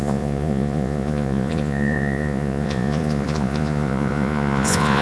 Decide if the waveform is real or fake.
fake